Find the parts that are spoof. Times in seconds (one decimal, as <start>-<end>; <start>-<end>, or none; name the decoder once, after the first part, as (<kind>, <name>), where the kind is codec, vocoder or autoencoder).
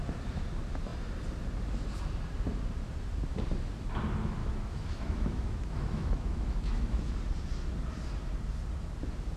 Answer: 4.4-7.1 (autoencoder, DAC-VAE)